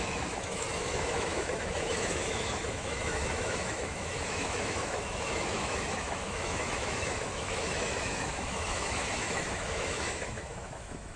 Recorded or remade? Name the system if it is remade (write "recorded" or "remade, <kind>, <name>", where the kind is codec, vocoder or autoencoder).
remade, autoencoder, DAC-VAE